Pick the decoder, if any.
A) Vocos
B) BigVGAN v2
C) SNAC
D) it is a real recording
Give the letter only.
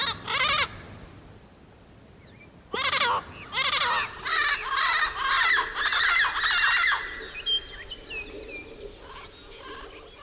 D